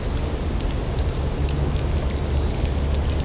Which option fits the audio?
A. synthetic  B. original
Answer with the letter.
B